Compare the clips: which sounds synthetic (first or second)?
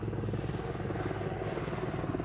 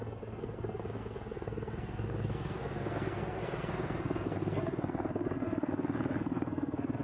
second